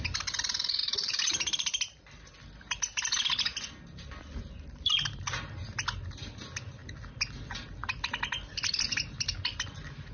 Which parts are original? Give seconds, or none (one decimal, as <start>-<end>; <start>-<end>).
0.0-0.8; 2.2-10.1